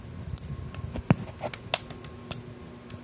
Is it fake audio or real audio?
real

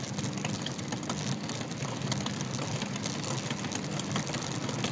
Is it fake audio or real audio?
real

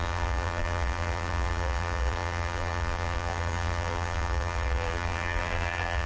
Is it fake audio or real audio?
fake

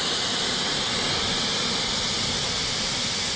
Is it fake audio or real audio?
real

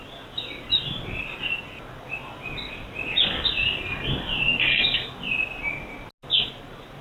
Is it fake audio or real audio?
real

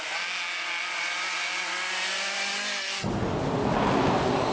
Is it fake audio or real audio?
real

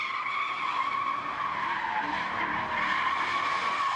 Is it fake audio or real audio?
real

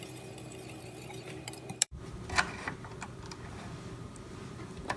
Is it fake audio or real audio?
fake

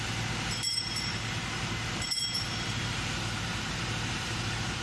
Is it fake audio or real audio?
fake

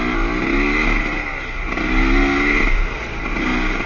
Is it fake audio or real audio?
real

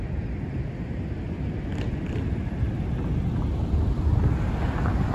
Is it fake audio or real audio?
real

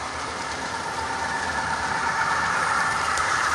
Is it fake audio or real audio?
fake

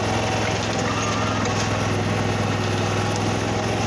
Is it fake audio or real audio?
real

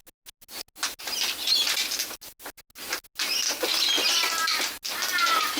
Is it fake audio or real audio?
real